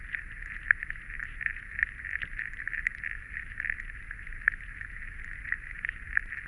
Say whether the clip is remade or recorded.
recorded